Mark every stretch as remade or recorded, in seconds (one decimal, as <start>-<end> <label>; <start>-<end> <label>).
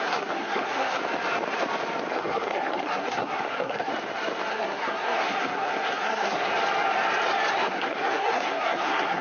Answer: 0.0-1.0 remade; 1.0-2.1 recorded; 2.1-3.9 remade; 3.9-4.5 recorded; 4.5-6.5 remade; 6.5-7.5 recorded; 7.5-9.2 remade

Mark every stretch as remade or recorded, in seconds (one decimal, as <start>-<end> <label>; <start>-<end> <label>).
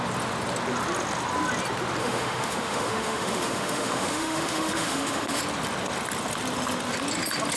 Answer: 0.0-2.0 recorded; 2.0-5.4 remade; 5.4-7.6 recorded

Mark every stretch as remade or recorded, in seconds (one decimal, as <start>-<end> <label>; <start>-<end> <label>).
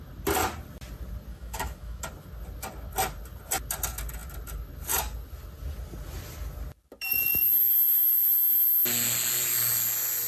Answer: 0.0-1.3 recorded; 1.3-2.0 remade; 2.0-10.3 recorded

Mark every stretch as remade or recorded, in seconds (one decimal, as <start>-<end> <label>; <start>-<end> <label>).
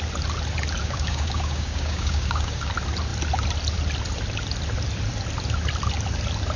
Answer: 0.0-0.8 recorded; 0.8-2.7 remade; 2.7-6.6 recorded